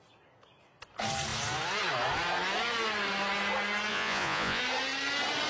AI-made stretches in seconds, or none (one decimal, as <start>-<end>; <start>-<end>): 3.9-4.6